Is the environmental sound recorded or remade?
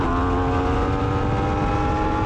recorded